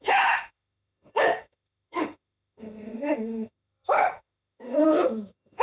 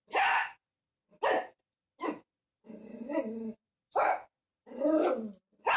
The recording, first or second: second